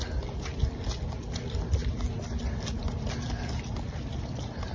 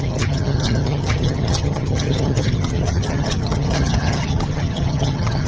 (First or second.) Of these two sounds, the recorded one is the first